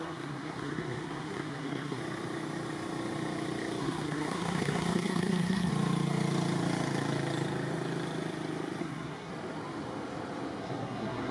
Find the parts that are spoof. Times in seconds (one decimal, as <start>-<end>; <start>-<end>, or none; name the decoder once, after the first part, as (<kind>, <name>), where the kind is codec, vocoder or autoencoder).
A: 0.0-2.0 (codec, SNAC); 3.8-5.7; 8.8-9.3; 10.6-11.3